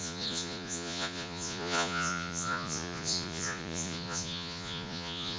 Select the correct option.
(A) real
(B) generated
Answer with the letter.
B